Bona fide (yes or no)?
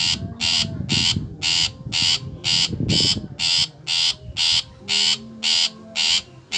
yes